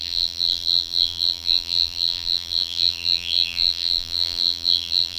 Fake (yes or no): yes